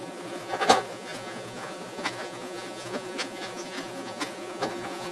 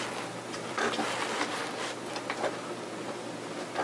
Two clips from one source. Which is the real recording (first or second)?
second